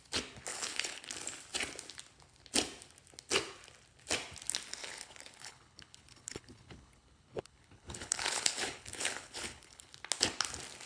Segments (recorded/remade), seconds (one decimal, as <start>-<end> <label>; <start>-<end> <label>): 0.0-0.5 recorded; 0.5-1.1 remade; 1.1-4.8 recorded; 4.8-9.9 remade; 9.9-10.9 recorded